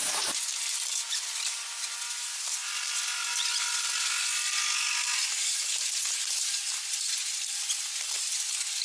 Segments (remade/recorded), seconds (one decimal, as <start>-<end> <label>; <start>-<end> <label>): 0.0-8.8 recorded